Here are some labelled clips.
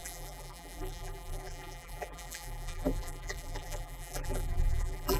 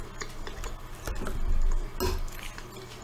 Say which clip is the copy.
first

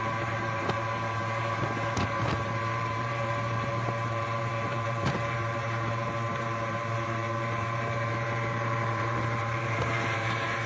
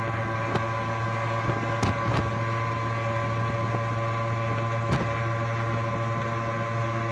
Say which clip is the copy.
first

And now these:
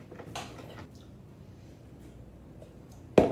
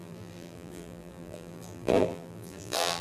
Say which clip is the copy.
second